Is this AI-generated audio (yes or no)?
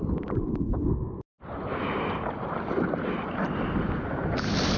no